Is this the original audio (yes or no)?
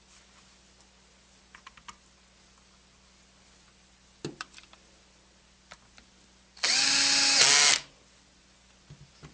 yes